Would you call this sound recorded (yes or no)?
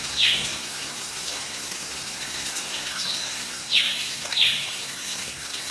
no